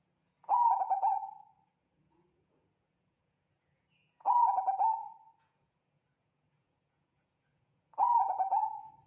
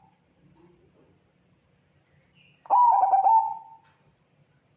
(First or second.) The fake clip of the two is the first